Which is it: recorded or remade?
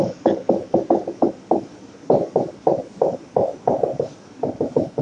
remade